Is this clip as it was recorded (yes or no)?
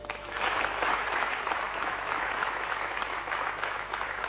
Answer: no